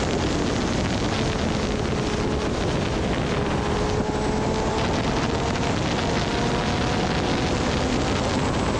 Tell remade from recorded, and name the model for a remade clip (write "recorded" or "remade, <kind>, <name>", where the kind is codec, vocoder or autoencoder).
recorded